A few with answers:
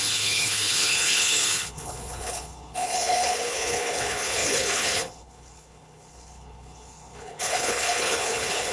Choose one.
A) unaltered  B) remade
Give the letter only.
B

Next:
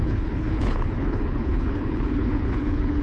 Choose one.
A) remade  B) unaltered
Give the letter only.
A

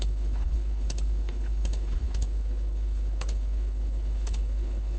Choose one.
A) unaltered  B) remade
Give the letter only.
B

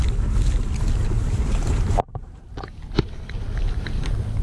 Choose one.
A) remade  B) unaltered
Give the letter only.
B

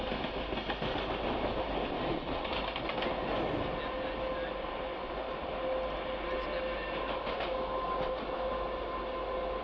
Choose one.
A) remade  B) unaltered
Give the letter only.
B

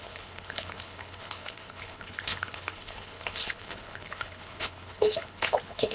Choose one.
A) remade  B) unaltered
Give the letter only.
A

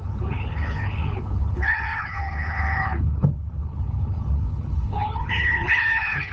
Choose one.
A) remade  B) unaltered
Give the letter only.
A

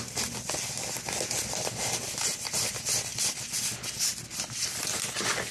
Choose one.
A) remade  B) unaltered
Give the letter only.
B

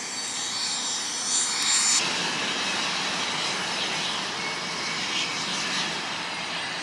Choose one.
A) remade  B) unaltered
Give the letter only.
B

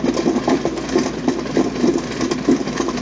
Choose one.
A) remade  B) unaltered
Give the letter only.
B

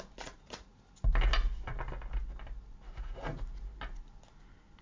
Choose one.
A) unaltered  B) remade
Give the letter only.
A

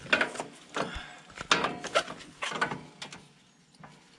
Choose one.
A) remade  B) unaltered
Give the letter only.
B